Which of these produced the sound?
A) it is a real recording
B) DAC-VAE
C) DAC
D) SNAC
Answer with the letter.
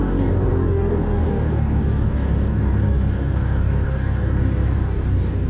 C